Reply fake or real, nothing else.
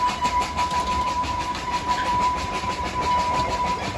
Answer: fake